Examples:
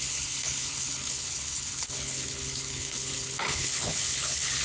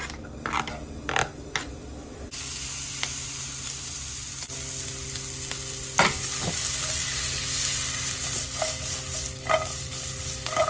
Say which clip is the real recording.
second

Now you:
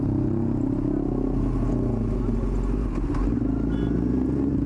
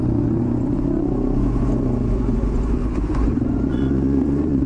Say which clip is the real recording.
first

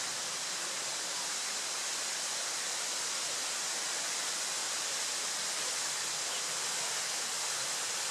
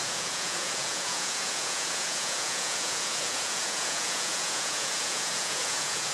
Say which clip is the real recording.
first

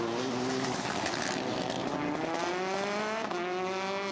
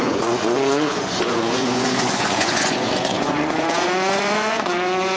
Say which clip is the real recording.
first